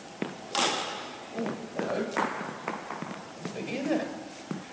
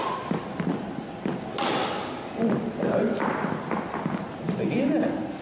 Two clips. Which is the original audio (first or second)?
second